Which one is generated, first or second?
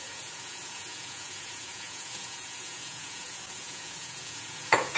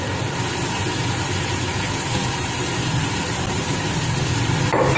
first